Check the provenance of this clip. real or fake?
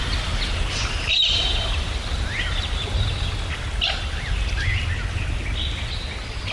real